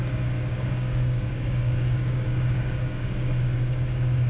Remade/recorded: remade